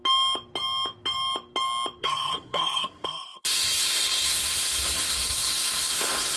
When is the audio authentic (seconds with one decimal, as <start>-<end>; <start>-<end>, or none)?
0.0-2.0